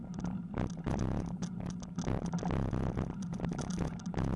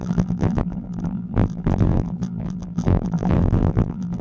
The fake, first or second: second